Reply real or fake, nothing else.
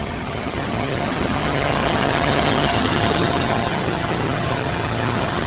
fake